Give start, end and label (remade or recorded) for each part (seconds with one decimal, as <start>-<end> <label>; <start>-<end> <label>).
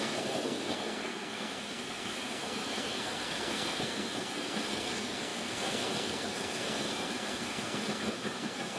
0.0-8.8 remade